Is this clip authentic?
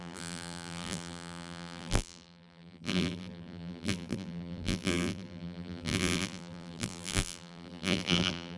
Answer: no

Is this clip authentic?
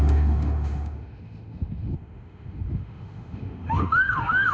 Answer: no